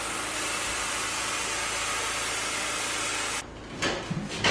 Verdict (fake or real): real